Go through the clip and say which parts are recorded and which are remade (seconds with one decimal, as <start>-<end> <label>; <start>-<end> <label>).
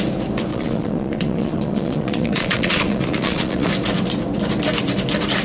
0.0-0.5 recorded; 0.5-3.7 remade; 3.7-5.4 recorded